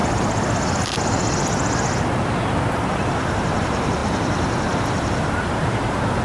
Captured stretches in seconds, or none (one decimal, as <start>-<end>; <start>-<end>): 0.0-2.8; 4.0-4.8